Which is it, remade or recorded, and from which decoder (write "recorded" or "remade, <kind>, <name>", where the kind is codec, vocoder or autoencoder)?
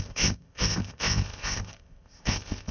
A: remade, codec, ZipCodec